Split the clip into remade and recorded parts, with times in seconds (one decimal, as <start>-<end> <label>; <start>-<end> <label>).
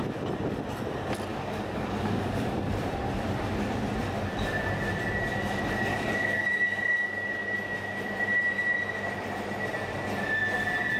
0.0-1.3 recorded; 1.3-2.7 remade; 2.7-5.9 recorded; 5.9-7.2 remade; 7.2-11.0 recorded